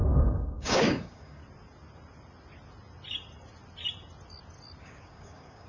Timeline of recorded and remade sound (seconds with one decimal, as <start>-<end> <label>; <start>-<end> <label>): 0.0-1.4 remade; 1.4-4.8 recorded; 4.8-5.7 remade

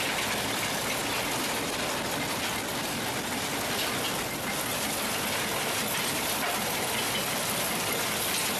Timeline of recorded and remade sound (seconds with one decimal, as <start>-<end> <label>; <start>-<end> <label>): 0.0-8.6 recorded

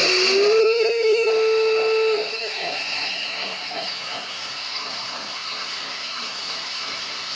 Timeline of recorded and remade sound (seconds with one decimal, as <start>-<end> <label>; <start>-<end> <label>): 0.0-0.6 recorded; 0.6-1.3 remade; 1.3-2.3 recorded; 2.3-7.4 remade

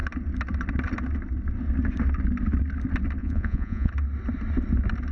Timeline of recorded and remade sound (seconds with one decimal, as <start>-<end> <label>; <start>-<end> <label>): 0.0-3.2 recorded; 3.2-3.9 remade; 3.9-5.1 recorded

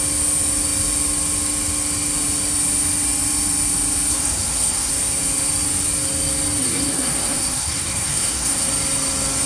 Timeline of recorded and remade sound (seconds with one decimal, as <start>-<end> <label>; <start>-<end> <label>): 0.0-4.1 recorded; 4.1-4.9 remade; 4.9-6.6 recorded; 6.6-8.7 remade; 8.7-9.5 recorded

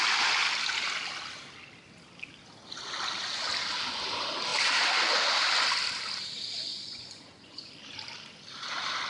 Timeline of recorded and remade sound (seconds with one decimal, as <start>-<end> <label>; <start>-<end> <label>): 0.0-6.7 recorded; 6.7-7.7 remade; 7.7-9.1 recorded

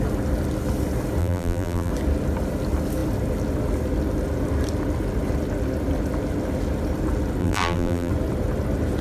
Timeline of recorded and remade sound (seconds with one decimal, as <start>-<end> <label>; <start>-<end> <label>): 0.0-1.2 recorded; 1.2-1.9 remade; 1.9-7.4 recorded; 7.4-8.1 remade; 8.1-9.0 recorded